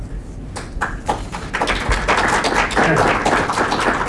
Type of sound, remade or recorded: recorded